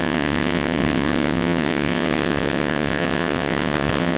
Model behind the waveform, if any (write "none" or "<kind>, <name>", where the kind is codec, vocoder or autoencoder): vocoder, WaveNeXt